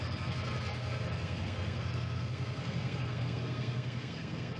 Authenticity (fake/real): fake